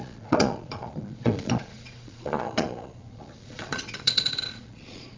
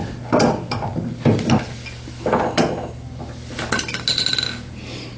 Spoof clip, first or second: first